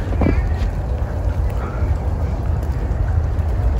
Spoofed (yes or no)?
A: no